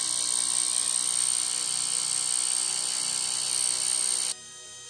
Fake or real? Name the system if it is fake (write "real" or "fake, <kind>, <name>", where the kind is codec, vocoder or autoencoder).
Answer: real